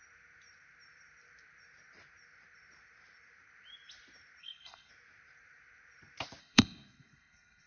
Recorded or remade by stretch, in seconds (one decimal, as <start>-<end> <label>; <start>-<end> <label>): 0.0-4.4 recorded; 4.4-4.9 remade; 4.9-6.4 recorded; 6.4-7.7 remade